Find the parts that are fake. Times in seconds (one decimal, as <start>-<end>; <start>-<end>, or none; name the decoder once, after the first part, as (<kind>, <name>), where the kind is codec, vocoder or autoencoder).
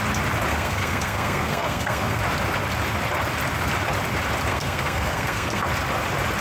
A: 0.5-2.2 (codec, SNAC); 4.5-5.6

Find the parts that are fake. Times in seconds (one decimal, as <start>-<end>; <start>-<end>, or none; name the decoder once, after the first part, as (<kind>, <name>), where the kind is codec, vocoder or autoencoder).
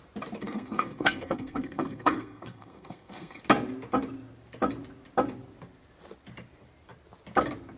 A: 0.4-3.4 (codec, SNAC)